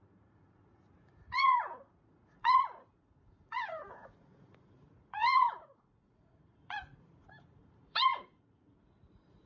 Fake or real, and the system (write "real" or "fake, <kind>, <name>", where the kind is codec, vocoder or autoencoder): fake, vocoder, Vocos